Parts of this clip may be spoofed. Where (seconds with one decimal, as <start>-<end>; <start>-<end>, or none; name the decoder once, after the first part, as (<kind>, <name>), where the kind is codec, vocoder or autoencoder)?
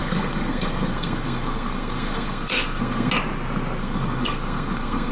0.0-3.1 (codec, SNAC); 3.8-5.1